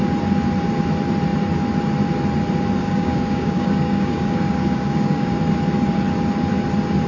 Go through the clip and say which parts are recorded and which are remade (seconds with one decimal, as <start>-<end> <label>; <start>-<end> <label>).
0.0-2.8 recorded; 2.8-5.4 remade; 5.4-7.1 recorded